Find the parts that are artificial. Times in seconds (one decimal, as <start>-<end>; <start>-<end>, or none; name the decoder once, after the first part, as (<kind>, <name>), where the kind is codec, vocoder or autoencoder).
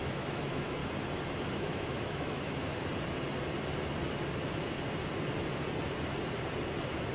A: 0.0-0.8 (autoencoder, DAC-VAE); 1.5-2.7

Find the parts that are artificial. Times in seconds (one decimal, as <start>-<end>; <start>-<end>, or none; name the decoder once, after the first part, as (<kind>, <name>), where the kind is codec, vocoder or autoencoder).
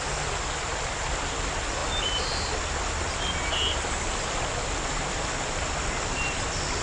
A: none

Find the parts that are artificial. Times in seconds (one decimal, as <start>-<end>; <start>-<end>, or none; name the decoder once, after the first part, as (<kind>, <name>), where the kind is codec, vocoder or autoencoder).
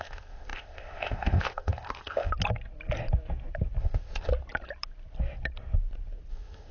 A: 0.0-2.3 (codec, ZipCodec); 3.8-4.3; 6.3-6.7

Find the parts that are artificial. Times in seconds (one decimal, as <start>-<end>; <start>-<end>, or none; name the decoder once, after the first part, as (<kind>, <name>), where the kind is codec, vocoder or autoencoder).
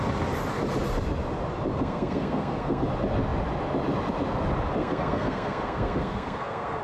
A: 1.7-2.8 (codec, SNAC); 4.8-6.8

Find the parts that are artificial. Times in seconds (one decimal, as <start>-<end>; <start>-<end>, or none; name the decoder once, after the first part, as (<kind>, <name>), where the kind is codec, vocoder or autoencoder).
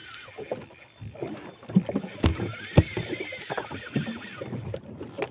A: none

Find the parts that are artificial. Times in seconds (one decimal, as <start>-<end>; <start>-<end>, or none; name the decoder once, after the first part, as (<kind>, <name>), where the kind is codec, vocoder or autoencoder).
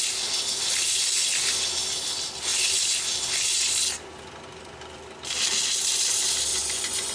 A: 6.5-7.1 (vocoder, Vocos)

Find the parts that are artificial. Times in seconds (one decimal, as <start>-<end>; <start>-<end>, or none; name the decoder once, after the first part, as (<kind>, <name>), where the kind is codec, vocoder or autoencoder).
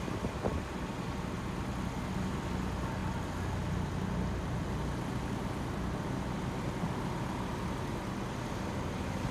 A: none